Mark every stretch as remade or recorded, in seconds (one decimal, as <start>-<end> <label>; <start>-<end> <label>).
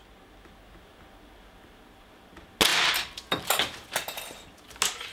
0.0-5.1 recorded